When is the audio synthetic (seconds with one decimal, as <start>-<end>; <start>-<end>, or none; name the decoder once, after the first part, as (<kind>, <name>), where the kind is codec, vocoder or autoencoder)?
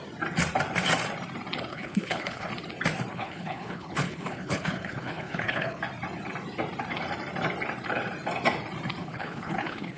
1.7-2.5 (codec, HILCodec); 3.1-5.8; 9.0-10.0